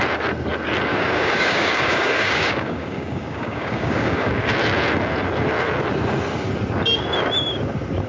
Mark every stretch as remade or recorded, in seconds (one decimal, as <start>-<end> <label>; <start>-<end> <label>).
0.0-0.9 recorded; 0.9-4.3 remade; 4.3-8.1 recorded